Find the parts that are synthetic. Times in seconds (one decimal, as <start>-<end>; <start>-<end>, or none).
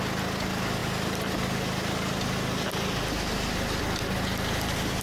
none